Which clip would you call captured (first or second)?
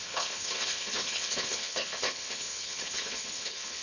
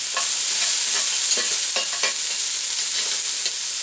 second